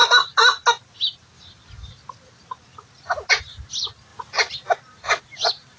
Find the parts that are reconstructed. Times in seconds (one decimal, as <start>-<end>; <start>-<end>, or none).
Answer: none